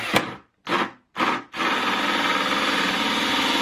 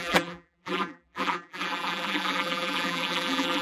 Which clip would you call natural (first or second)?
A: first